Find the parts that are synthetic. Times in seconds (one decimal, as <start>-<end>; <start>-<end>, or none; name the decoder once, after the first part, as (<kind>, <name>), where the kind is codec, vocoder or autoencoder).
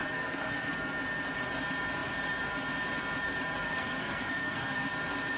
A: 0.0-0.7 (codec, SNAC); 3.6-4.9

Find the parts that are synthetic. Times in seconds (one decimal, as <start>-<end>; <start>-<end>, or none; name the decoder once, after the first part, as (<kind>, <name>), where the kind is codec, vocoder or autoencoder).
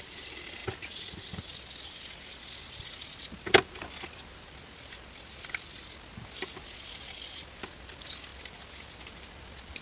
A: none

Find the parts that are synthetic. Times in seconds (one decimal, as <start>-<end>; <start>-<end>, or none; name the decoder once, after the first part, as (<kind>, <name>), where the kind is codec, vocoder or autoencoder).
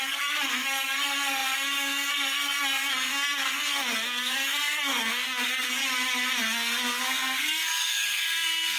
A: 0.0-5.8 (codec, SNAC); 6.4-8.8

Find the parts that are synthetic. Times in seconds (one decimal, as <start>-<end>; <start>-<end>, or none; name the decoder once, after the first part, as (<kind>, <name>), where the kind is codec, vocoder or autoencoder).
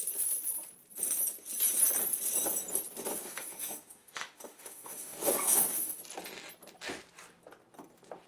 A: 3.1-6.0 (autoencoder, DAC-VAE)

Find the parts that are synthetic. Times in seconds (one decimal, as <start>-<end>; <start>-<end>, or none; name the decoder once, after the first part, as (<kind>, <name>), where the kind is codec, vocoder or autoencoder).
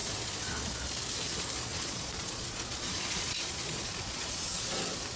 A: 0.0-0.5 (vocoder, Vocos); 1.7-4.8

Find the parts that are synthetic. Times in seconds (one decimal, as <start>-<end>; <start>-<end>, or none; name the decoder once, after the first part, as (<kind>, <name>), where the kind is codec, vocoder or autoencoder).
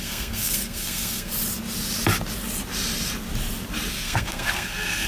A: 0.0-1.3 (codec, SNAC); 3.9-5.1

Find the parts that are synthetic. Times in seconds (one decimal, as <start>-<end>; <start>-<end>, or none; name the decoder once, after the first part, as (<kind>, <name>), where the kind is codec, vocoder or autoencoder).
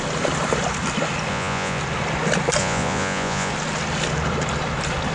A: 1.3-1.8 (vocoder, Vocos); 2.6-3.5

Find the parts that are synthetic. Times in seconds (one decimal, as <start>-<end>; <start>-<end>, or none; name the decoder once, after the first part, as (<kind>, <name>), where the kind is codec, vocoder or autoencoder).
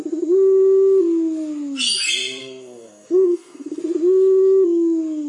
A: 2.4-3.8 (codec, SNAC)